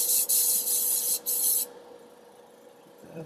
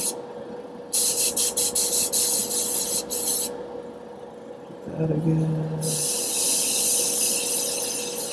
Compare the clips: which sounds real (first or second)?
second